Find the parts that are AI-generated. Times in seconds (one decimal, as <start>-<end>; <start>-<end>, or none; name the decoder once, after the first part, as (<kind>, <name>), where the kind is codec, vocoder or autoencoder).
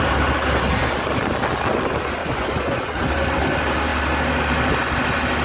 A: 2.2-3.0 (vocoder, Vocos)